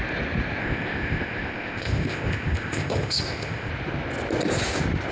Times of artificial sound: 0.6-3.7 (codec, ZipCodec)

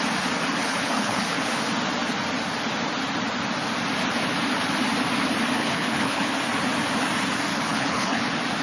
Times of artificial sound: 0.6-1.4 (codec, HILCodec); 5.6-6.4; 7.5-8.2

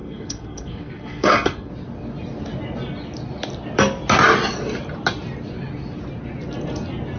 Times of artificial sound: 0.0-1.7 (codec, SNAC)

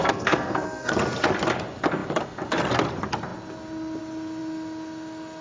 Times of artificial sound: 0.0-0.9 (codec, SNAC)